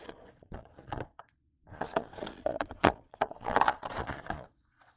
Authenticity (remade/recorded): remade